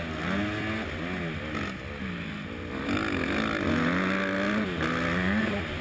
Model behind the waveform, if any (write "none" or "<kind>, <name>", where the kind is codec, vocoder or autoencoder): none